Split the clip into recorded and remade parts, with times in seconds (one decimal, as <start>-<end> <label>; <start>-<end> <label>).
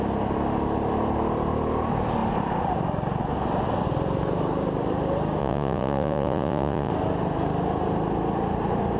0.0-5.4 recorded; 5.4-6.9 remade; 6.9-9.0 recorded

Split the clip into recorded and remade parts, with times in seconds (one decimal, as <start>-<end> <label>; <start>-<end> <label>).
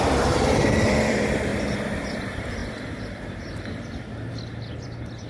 0.0-1.5 remade; 1.5-2.1 recorded; 2.1-2.6 remade; 2.6-4.3 recorded; 4.3-5.3 remade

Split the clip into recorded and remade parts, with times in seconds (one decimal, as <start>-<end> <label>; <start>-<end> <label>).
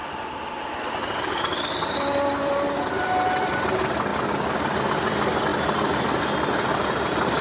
0.0-7.4 recorded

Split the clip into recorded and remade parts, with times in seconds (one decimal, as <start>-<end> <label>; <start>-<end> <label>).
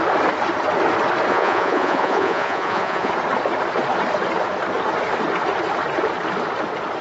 0.0-1.3 recorded; 1.3-3.1 remade; 3.1-7.0 recorded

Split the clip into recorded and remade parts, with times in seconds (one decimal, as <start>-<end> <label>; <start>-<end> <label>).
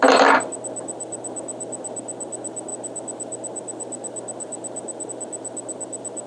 0.0-6.3 recorded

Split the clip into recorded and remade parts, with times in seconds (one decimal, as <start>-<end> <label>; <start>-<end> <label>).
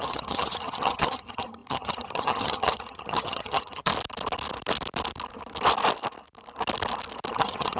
0.0-3.9 remade; 3.9-7.3 recorded; 7.3-7.8 remade